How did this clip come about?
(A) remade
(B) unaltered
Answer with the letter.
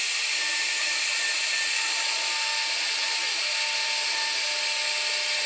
B